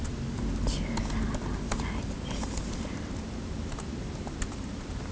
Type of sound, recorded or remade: recorded